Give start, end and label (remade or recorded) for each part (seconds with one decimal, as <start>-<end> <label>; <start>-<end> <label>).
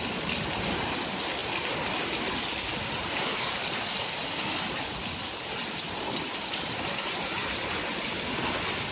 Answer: 0.0-1.4 recorded; 1.4-2.2 remade; 2.2-5.6 recorded; 5.6-6.9 remade; 6.9-8.9 recorded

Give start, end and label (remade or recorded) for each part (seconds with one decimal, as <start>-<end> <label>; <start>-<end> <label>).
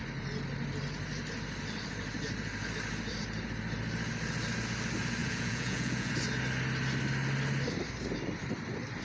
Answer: 0.0-5.2 recorded; 5.2-6.1 remade; 6.1-9.0 recorded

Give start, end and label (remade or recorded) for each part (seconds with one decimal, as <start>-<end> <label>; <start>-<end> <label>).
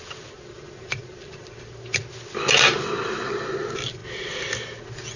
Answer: 0.0-5.2 recorded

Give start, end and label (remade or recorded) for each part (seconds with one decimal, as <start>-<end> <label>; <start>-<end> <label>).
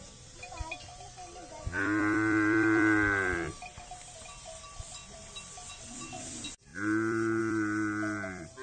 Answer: 0.0-8.6 remade